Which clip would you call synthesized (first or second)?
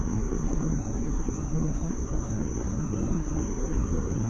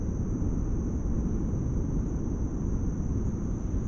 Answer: first